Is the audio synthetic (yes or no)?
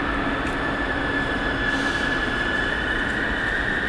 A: no